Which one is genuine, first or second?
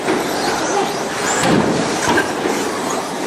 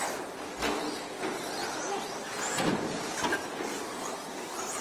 second